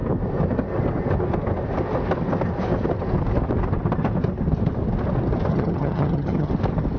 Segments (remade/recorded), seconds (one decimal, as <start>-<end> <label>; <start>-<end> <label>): 0.0-5.5 recorded; 5.5-6.5 remade; 6.5-7.0 recorded